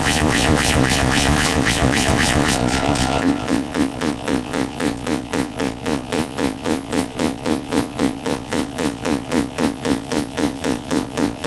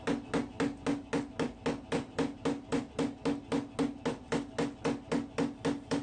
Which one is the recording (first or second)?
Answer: second